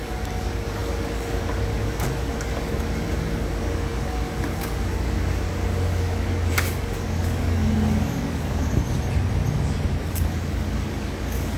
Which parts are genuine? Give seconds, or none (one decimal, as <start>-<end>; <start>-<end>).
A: 8.8-10.1